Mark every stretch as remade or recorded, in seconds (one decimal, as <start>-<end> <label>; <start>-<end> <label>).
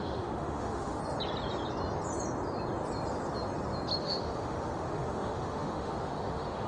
0.0-1.0 remade; 1.0-4.0 recorded; 4.0-6.7 remade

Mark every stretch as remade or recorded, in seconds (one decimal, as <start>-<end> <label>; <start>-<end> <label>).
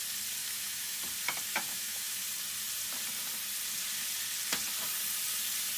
0.0-0.4 recorded; 0.4-1.0 remade; 1.0-1.7 recorded; 1.7-2.2 remade; 2.2-5.8 recorded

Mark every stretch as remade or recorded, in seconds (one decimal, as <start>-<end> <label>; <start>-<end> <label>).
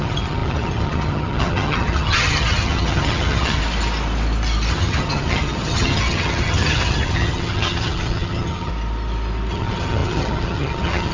0.0-3.6 remade; 3.6-4.7 recorded; 4.7-8.7 remade; 8.7-9.5 recorded; 9.5-11.1 remade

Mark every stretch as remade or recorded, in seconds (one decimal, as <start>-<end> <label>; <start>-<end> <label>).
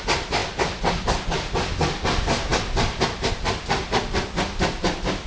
0.0-5.3 recorded